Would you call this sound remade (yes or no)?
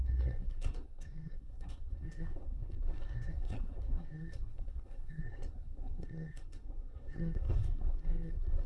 yes